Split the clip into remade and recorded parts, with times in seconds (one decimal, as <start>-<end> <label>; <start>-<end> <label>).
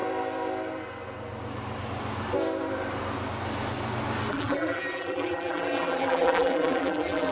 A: 0.0-4.3 recorded; 4.3-7.3 remade